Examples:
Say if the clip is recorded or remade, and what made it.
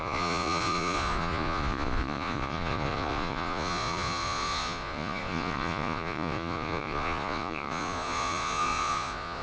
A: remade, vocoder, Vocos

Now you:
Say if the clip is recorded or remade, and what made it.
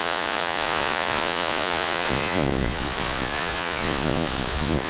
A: remade, vocoder, Vocos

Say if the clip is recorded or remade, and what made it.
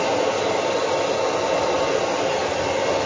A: recorded